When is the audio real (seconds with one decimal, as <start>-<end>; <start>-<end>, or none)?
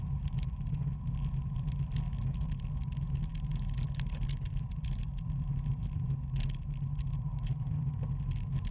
0.0-8.7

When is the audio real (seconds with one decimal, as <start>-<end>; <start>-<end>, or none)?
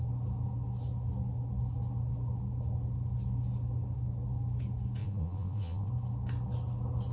0.0-5.0; 5.9-7.1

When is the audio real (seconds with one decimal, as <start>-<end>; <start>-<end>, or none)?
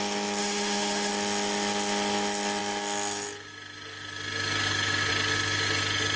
0.0-0.4; 1.1-6.2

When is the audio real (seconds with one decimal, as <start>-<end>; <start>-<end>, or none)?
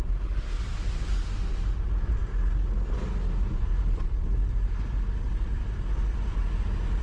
0.0-7.0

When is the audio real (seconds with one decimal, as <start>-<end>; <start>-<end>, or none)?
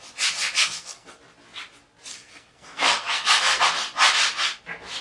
0.0-0.6; 1.2-2.1; 3.6-5.0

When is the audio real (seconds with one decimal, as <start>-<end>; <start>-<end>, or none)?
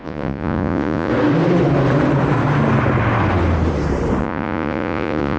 1.1-4.2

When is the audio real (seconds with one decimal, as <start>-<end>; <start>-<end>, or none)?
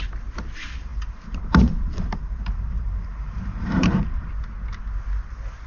0.0-0.9; 4.3-5.7